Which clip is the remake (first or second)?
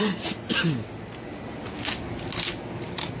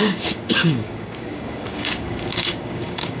second